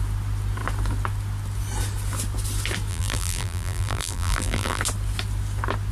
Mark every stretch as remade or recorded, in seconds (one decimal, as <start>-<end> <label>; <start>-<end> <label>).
0.0-2.9 recorded; 2.9-4.8 remade; 4.8-5.9 recorded